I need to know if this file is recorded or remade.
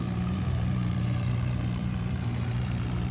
remade